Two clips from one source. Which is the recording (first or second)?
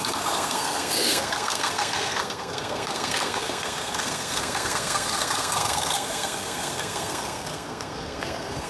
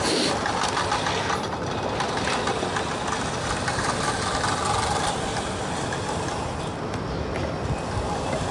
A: second